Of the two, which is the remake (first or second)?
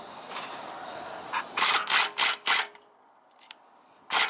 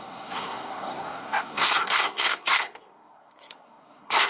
second